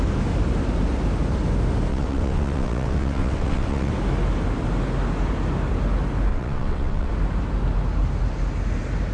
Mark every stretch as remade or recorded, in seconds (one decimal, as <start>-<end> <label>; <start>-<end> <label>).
0.0-1.9 recorded; 1.9-3.9 remade; 3.9-6.3 recorded; 6.3-7.1 remade; 7.1-9.1 recorded